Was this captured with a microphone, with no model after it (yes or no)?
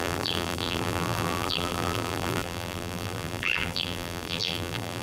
no